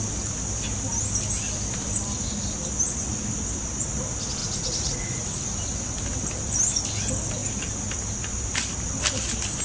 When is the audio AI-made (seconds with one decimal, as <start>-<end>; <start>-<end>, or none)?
4.4-5.4